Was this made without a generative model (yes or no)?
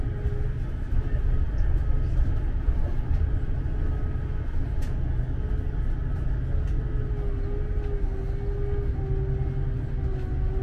yes